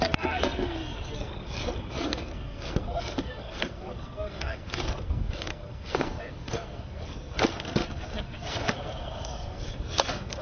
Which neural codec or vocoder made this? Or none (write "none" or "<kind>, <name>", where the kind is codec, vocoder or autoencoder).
codec, SNAC